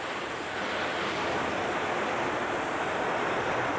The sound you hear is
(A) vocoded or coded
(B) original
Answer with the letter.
B